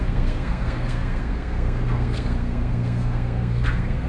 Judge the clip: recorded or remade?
remade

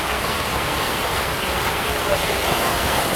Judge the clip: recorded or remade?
remade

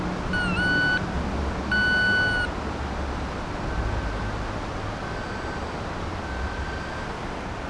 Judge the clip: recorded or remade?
recorded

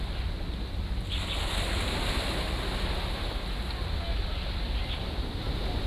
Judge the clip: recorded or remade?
recorded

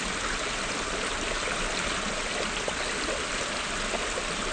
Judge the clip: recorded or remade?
recorded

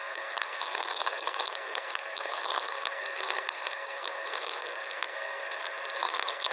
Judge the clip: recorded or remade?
remade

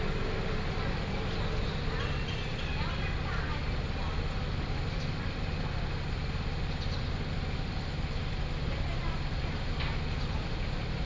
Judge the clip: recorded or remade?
recorded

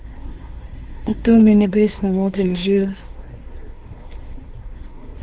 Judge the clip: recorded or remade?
remade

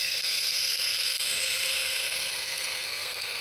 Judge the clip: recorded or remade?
remade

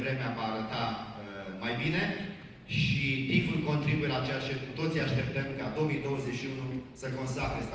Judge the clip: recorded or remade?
recorded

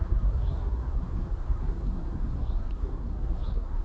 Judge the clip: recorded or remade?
remade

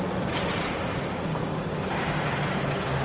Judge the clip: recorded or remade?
recorded